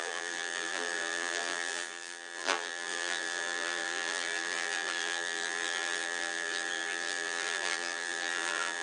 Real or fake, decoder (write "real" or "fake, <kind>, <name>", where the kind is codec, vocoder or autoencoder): fake, vocoder, BigVGAN v2